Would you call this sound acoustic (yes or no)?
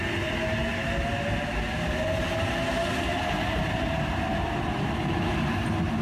yes